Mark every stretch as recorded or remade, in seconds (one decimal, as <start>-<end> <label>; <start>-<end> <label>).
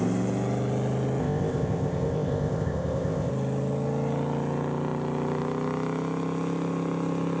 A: 0.0-1.2 recorded; 1.2-3.3 remade; 3.3-7.4 recorded